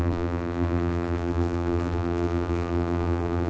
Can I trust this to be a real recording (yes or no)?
no